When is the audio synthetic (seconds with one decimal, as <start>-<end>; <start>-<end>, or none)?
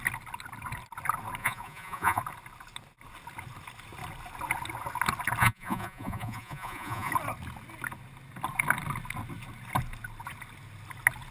1.4-2.2; 5.4-7.1